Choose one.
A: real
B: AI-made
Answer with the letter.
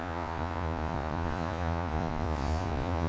B